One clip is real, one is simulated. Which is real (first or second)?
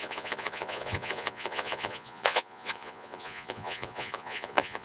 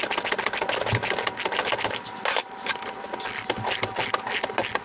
second